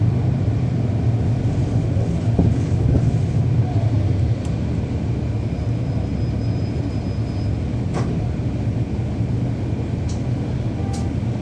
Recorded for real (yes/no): yes